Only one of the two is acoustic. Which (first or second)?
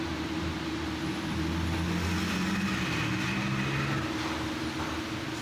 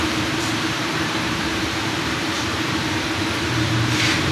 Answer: first